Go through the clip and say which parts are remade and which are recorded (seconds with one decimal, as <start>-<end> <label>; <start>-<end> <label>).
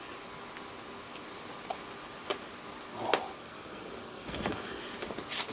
0.0-3.4 recorded; 3.4-4.8 remade; 4.8-5.5 recorded